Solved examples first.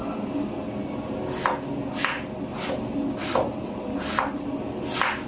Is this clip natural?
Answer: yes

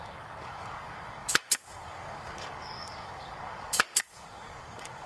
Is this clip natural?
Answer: no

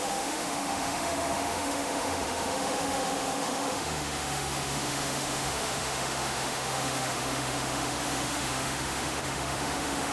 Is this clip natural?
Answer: no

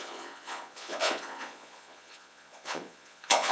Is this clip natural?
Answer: no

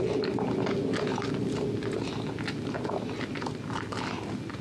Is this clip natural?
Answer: yes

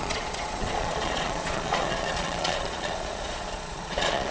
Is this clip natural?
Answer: no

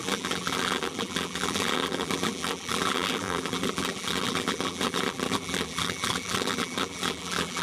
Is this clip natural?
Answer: no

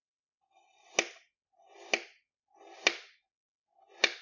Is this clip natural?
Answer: yes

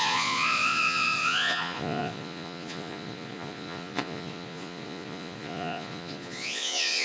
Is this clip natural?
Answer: no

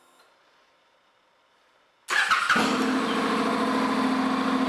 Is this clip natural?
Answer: yes